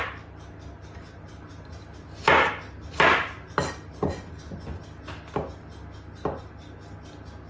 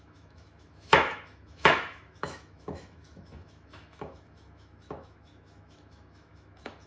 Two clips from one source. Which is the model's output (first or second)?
second